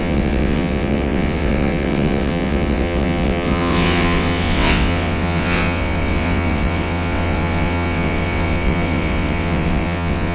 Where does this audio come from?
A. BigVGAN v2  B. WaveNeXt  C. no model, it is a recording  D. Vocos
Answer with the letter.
B